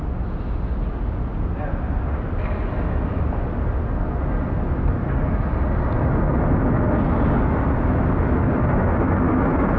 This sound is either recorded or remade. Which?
recorded